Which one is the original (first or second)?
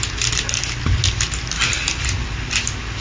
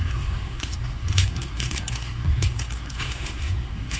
first